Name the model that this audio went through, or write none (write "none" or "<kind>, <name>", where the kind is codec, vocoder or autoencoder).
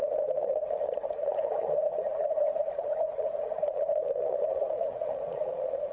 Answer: vocoder, Vocos